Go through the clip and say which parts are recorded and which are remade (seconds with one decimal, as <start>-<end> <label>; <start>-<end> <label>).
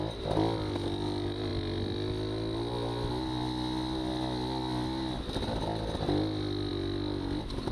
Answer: 0.0-7.7 recorded